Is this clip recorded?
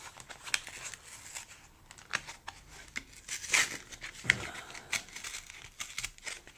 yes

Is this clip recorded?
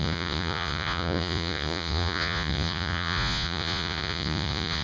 no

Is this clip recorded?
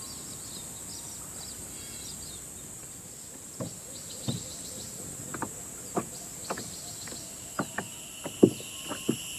yes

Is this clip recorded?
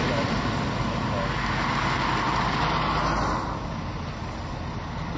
yes